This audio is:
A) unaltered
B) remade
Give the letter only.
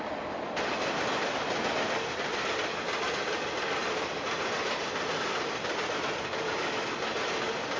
A